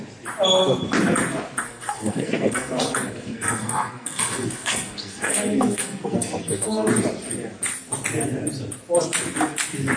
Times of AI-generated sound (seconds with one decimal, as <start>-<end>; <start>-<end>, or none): 1.7-6.9